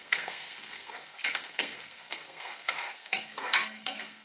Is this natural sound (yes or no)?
no